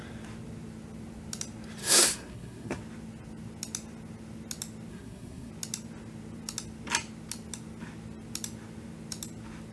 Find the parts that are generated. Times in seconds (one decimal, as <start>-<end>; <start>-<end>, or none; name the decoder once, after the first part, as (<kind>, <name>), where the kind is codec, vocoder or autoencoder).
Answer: 1.8-2.8 (codec, SNAC); 4.9-5.5